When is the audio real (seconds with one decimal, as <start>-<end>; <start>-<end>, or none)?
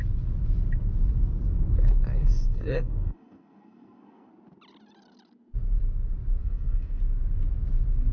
0.0-2.2; 4.3-6.4; 7.0-8.1